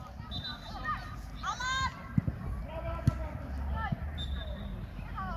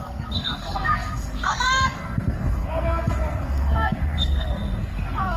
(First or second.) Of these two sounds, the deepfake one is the second